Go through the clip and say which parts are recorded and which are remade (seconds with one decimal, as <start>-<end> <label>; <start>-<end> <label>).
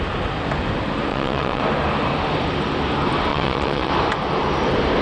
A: 0.0-1.1 recorded; 1.1-1.6 remade; 1.6-3.3 recorded; 3.3-3.9 remade; 3.9-5.0 recorded